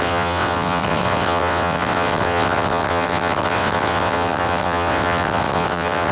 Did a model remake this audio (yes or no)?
yes